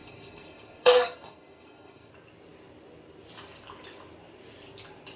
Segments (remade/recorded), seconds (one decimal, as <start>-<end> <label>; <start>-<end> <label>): 0.0-2.1 remade; 2.1-5.2 recorded